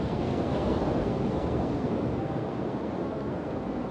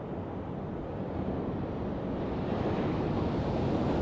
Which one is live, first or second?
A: second